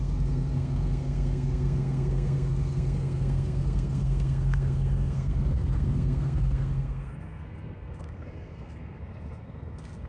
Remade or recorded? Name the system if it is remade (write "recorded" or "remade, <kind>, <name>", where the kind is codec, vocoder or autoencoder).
remade, codec, SNAC